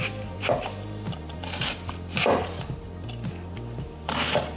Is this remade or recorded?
recorded